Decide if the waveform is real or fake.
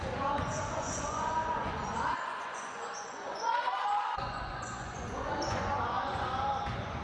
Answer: fake